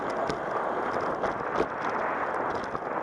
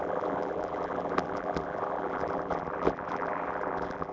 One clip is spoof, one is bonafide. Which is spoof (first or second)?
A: second